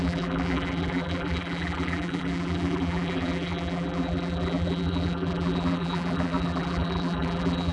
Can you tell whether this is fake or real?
fake